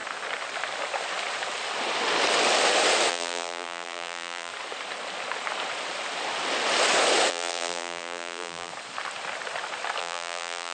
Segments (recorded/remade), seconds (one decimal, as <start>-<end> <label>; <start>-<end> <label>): 0.0-3.1 recorded; 3.1-4.5 remade; 4.5-7.3 recorded; 7.3-8.7 remade; 8.7-10.0 recorded; 10.0-10.7 remade